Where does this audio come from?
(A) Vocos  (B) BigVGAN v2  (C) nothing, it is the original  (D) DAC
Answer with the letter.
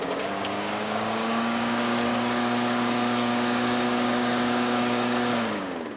D